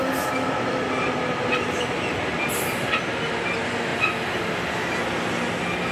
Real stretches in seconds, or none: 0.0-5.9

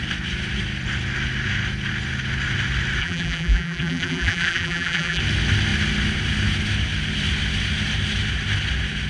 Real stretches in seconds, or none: 0.0-3.0; 5.2-9.1